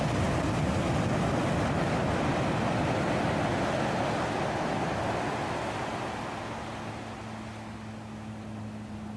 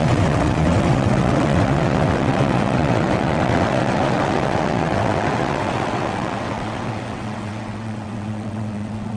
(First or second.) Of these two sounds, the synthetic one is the second